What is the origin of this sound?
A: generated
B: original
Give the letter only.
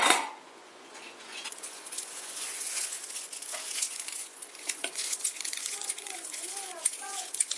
A